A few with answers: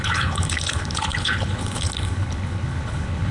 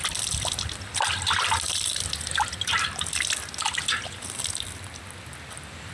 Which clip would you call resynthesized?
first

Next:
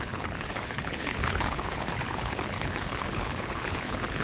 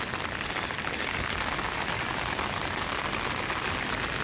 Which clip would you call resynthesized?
first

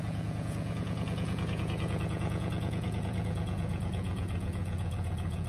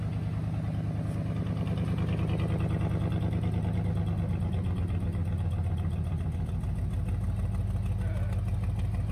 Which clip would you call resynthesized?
first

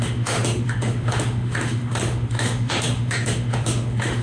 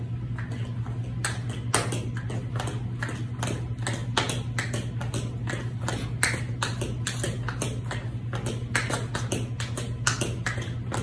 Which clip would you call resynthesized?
first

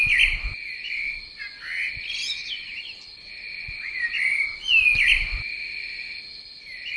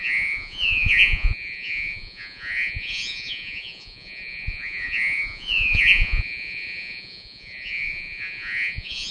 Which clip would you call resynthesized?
second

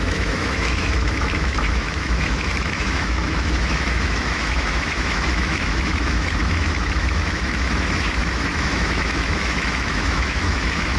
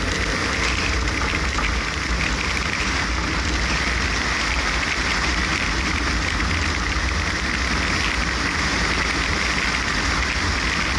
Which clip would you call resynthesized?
first